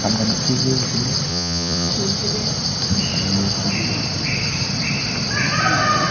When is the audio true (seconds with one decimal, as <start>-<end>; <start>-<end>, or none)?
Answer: 0.0-1.3; 1.9-6.1